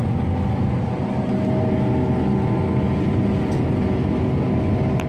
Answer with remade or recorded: recorded